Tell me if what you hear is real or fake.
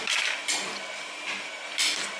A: real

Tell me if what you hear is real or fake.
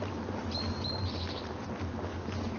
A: real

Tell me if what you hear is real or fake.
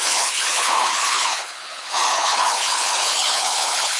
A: fake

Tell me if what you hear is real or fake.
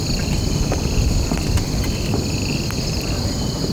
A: real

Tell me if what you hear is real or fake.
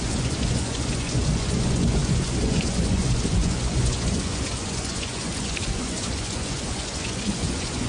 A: fake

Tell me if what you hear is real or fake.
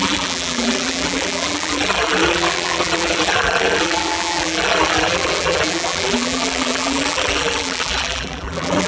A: fake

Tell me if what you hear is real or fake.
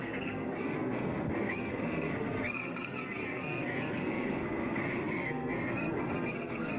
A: fake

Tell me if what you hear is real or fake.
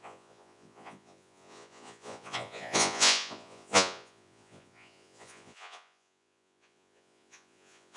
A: fake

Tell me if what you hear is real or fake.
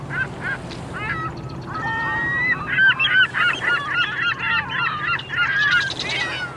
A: real